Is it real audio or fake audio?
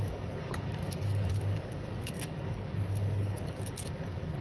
fake